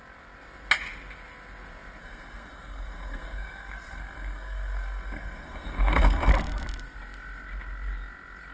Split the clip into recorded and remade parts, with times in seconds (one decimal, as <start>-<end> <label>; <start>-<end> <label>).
0.0-2.0 recorded; 2.0-6.3 remade; 6.3-8.5 recorded